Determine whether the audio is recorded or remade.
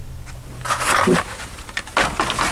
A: recorded